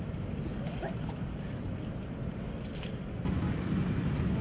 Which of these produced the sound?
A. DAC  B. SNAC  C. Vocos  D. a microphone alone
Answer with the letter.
D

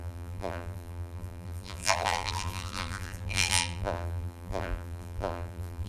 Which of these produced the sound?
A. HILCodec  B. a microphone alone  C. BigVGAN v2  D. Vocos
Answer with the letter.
C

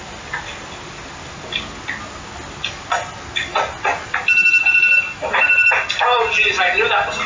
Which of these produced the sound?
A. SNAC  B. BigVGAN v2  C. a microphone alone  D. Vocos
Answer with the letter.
C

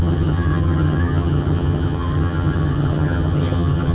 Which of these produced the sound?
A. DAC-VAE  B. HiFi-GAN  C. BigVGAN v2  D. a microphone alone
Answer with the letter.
B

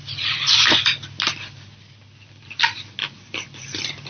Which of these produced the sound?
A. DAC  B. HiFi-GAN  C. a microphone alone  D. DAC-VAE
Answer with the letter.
C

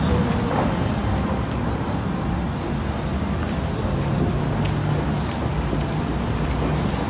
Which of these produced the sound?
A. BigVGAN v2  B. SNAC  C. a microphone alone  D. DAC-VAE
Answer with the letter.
C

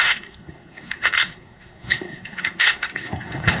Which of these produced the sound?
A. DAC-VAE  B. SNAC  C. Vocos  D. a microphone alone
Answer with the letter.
B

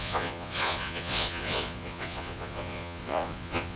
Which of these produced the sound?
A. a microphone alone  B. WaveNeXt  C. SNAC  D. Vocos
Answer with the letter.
D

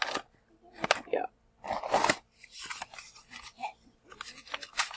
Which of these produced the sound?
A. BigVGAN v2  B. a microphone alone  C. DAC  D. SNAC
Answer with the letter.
B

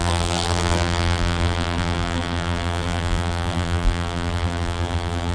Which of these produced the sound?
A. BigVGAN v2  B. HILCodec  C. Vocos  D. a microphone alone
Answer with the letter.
A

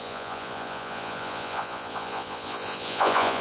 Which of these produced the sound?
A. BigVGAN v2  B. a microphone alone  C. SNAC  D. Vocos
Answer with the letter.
D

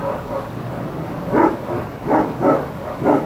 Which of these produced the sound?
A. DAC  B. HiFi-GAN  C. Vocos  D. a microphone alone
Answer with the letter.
A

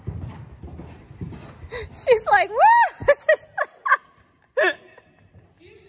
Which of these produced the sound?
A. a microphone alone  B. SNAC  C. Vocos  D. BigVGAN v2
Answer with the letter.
A